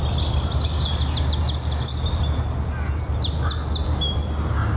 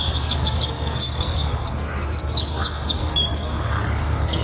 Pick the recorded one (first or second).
first